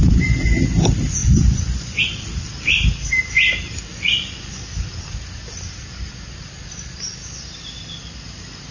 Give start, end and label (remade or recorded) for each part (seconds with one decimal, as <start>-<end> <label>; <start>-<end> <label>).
0.0-1.2 recorded; 1.2-2.0 remade; 2.0-3.9 recorded; 3.9-4.6 remade; 4.6-8.7 recorded